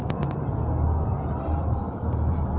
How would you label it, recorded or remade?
recorded